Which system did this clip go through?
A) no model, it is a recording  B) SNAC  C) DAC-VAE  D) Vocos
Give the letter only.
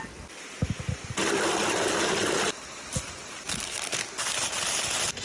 A